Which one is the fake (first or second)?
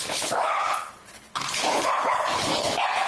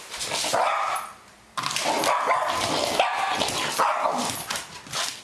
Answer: first